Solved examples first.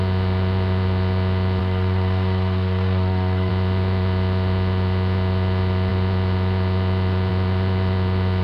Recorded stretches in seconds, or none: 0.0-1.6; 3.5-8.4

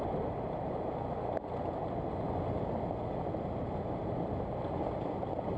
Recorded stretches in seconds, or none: 0.0-5.6

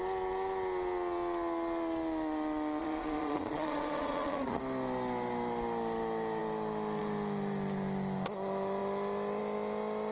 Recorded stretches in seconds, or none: 0.0-2.8; 4.6-10.1

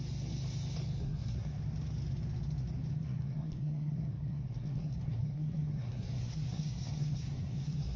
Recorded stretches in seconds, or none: 0.0-1.0; 1.6-2.9

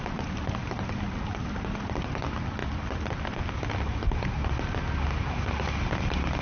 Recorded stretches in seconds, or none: 0.0-6.4